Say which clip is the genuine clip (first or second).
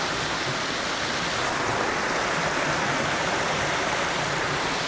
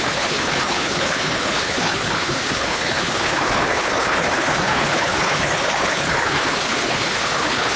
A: first